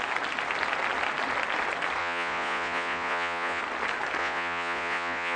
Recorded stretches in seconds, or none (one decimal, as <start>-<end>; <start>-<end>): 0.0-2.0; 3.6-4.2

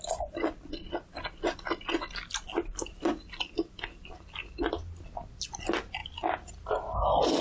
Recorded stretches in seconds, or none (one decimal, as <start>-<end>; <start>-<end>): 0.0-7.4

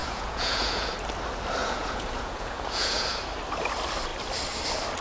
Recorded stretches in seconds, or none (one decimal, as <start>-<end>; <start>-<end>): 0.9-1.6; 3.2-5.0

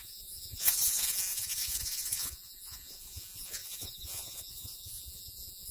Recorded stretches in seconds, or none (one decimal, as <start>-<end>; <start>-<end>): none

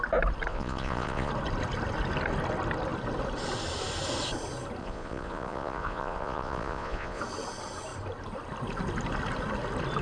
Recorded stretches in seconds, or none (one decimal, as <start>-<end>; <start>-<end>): 0.0-0.5; 1.3-4.8; 7.2-10.0

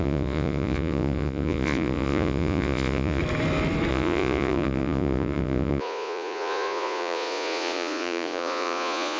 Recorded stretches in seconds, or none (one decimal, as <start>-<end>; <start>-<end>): 3.2-3.9